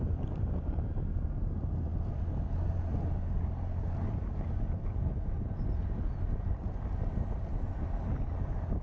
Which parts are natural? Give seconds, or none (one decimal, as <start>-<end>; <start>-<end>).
0.0-8.8